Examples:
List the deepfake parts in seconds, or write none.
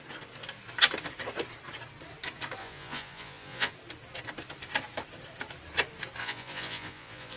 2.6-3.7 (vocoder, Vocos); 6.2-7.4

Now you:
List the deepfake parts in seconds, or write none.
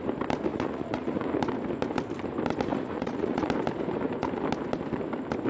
0.5-1.3 (vocoder, Vocos); 2.7-3.5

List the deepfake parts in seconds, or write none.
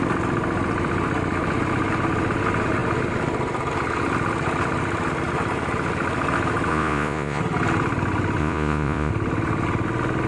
6.7-7.4 (vocoder, Vocos); 8.4-9.1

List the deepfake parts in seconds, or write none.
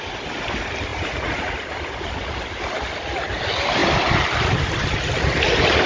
0.9-1.5 (vocoder, Vocos)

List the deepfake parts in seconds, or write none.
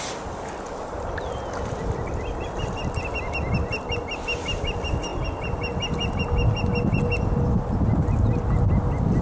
none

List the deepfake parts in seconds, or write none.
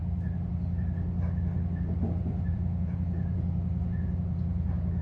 2.5-5.0 (vocoder, Vocos)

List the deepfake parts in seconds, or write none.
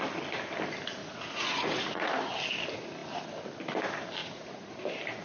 1.0-2.3 (vocoder, Vocos); 4.2-4.7